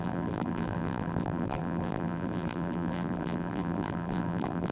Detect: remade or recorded remade